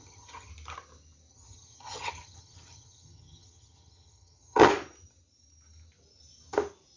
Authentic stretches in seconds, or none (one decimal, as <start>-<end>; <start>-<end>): 0.5-1.3; 4.7-7.0